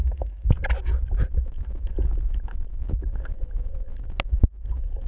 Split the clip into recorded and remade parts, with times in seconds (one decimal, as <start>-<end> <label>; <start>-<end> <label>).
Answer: 0.0-0.5 remade; 0.5-5.1 recorded